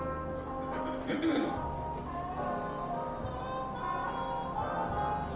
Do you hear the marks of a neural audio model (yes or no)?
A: no